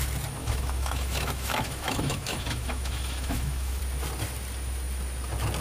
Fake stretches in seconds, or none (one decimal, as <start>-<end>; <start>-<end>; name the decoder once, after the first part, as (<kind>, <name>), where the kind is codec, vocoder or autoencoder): 0.4-3.8 (autoencoder, DAC-VAE)